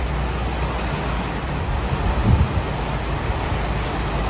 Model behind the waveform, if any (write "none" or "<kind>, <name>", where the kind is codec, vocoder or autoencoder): none